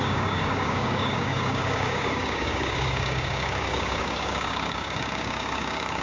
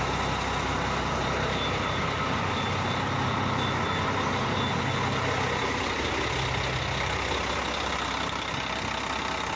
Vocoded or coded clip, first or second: first